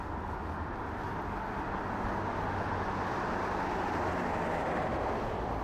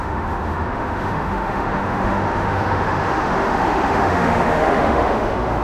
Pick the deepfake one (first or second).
second